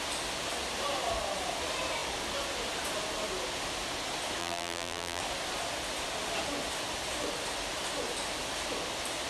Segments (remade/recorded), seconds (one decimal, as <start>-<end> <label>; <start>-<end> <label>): 0.0-4.4 recorded; 4.4-5.2 remade; 5.2-9.3 recorded